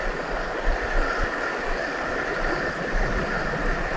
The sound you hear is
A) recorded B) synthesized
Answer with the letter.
A